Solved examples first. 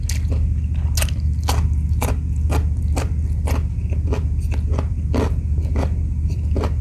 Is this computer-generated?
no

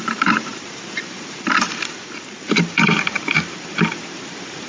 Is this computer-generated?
yes